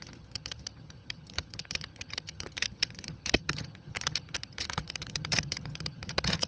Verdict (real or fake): fake